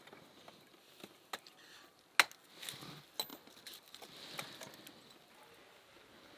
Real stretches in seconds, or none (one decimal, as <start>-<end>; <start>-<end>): 0.0-6.4